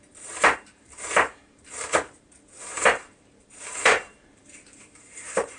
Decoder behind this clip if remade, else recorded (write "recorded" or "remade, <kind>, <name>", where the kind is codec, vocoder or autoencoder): remade, vocoder, BigVGAN v2